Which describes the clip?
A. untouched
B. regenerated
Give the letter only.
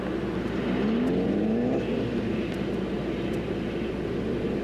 A